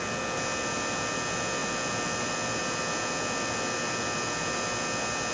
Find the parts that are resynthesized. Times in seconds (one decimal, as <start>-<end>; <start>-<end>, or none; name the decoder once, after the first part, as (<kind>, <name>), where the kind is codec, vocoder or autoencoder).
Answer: none